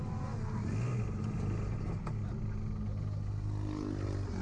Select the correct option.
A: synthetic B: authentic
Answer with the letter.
B